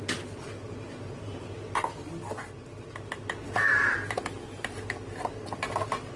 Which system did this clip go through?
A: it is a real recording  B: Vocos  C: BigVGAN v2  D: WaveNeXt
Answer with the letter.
A